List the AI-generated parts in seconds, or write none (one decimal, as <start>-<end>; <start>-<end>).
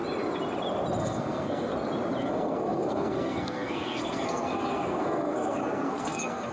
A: 1.0-1.7; 2.2-6.5